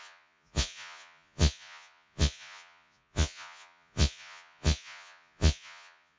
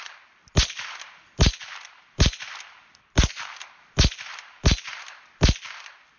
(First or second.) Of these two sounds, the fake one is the first